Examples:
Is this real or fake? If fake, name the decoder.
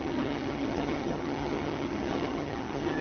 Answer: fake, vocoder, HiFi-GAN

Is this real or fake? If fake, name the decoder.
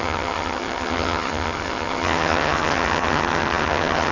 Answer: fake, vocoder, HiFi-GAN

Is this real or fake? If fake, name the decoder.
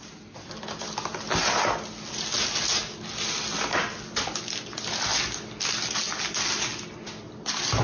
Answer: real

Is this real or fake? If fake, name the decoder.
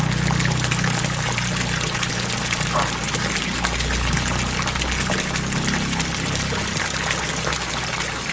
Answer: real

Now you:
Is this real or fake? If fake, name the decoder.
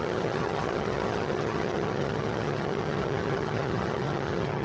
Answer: fake, vocoder, HiFi-GAN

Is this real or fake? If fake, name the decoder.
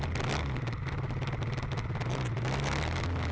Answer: real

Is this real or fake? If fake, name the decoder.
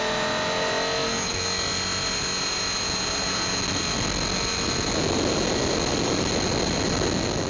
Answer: real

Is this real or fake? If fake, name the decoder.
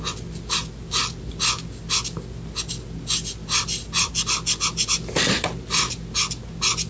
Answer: real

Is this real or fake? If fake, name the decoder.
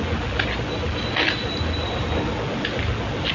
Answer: real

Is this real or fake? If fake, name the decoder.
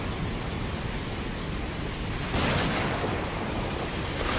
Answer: real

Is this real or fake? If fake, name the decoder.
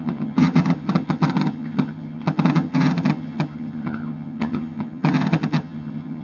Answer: fake, vocoder, HiFi-GAN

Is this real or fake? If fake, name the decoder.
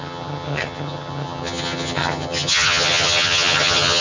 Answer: fake, vocoder, HiFi-GAN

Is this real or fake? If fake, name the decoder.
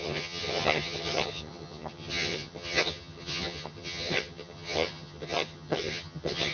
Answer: fake, vocoder, HiFi-GAN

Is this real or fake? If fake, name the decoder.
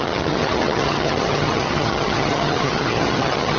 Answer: fake, vocoder, HiFi-GAN